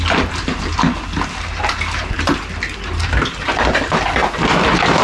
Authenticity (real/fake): real